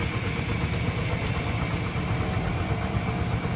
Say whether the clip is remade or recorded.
recorded